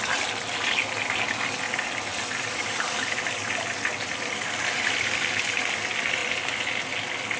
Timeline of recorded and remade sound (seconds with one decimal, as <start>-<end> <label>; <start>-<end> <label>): 0.0-2.1 recorded; 2.1-5.3 remade; 5.3-7.4 recorded